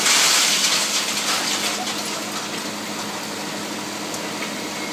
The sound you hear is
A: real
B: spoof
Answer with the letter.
A